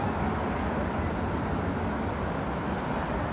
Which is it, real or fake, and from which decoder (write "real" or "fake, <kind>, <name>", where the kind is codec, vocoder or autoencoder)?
real